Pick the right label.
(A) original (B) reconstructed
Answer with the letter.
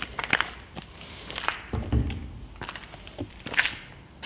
A